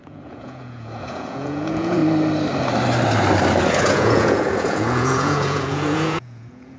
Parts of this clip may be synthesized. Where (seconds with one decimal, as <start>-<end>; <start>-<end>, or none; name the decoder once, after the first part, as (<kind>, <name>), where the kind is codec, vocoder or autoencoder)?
0.0-2.0 (vocoder, Vocos); 3.8-6.8